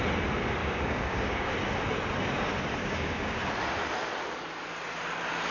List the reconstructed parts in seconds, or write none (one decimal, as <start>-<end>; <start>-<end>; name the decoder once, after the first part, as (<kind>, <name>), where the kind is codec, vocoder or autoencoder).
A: 0.6-1.5 (codec, DAC); 2.8-3.4